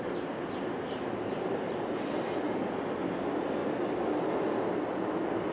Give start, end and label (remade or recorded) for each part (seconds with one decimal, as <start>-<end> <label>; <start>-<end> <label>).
0.0-5.5 recorded